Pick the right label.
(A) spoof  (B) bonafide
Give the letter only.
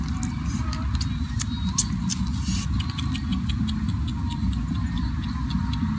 B